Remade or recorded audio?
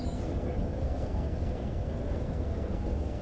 remade